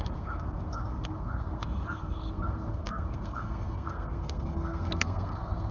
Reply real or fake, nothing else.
fake